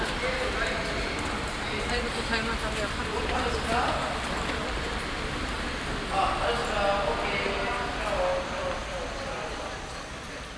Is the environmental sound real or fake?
real